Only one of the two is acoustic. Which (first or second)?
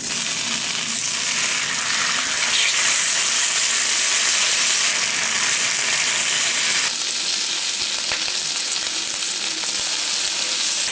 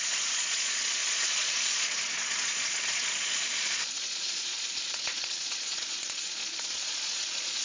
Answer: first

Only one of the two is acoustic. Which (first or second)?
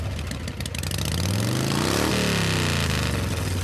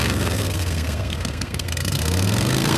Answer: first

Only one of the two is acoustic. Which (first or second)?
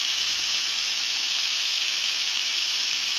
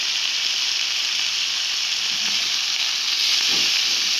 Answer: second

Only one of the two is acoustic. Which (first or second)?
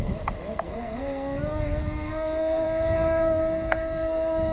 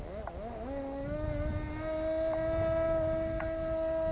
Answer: second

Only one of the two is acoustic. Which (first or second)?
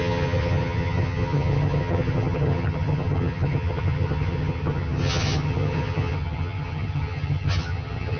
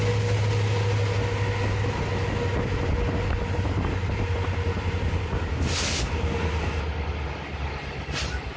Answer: second